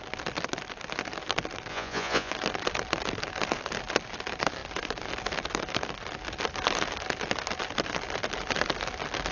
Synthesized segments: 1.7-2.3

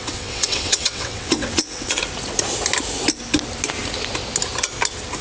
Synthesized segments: 0.0-2.0

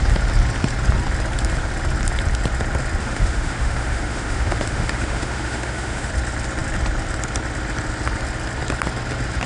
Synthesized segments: 3.0-6.1

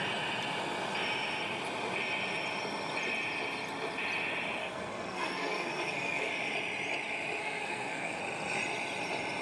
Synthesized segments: 4.6-6.3; 7.4-8.2

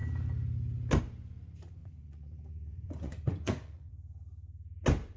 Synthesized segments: 1.8-3.9

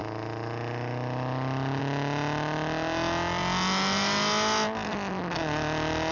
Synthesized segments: none